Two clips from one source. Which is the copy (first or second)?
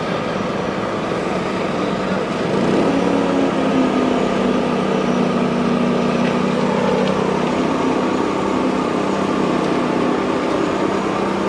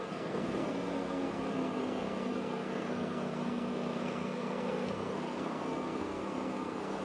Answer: second